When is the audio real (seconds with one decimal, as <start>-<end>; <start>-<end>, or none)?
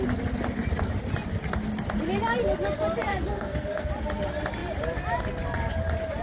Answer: 0.0-3.1; 3.9-6.2